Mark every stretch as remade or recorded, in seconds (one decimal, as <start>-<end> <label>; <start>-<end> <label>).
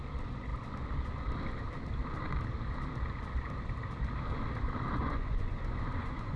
0.0-5.0 recorded; 5.0-6.4 remade